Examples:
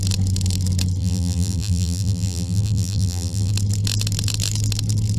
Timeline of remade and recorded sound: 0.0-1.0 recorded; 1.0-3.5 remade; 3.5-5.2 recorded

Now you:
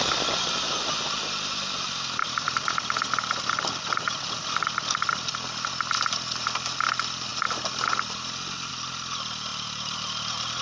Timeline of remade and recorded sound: 0.0-10.6 recorded

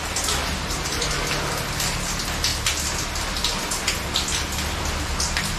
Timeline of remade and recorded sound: 0.0-0.4 recorded; 0.4-1.1 remade; 1.1-5.6 recorded

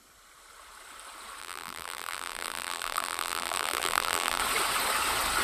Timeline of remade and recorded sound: 0.0-1.4 recorded; 1.4-4.4 remade; 4.4-5.4 recorded